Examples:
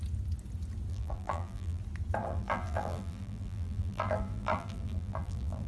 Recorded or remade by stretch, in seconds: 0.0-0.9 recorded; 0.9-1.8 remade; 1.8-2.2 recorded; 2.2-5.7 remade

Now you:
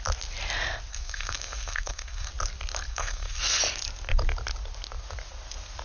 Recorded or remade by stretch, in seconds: 0.0-0.9 recorded; 0.9-2.3 remade; 2.3-2.9 recorded; 2.9-3.6 remade; 3.6-5.8 recorded

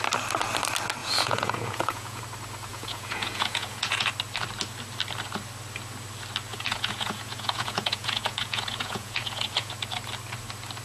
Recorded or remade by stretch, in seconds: 0.0-1.0 recorded; 1.0-2.2 remade; 2.2-2.7 recorded; 2.7-4.1 remade; 4.1-6.5 recorded; 6.5-9.7 remade; 9.7-10.8 recorded

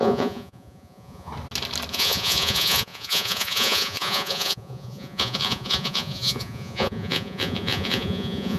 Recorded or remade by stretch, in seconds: 0.0-1.3 remade; 1.3-1.9 recorded; 1.9-8.6 remade

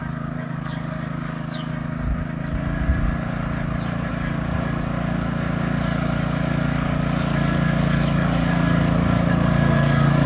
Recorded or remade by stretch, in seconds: 0.0-1.7 remade; 1.7-4.1 recorded; 4.1-10.3 remade

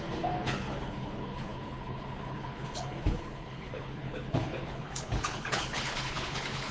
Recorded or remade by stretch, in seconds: 0.0-6.7 remade

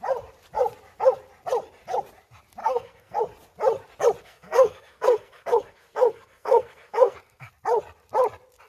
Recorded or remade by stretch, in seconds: 0.0-2.6 recorded; 2.6-3.2 remade; 3.2-4.2 recorded; 4.2-7.5 remade; 7.5-8.7 recorded

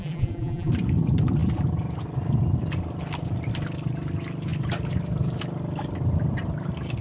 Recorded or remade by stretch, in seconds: 0.0-0.7 remade; 0.7-7.0 recorded